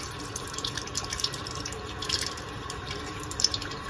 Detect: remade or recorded remade